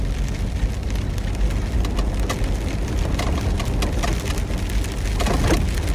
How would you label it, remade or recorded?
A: recorded